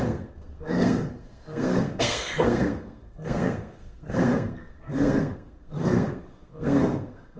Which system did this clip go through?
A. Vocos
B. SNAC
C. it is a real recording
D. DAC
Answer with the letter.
B